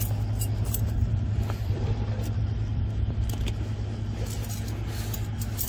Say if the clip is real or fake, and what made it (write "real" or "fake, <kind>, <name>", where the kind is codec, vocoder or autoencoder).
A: real